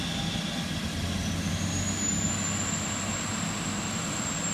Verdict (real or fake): real